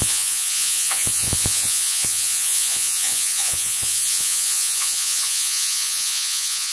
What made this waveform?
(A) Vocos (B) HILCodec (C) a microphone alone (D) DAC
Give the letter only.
A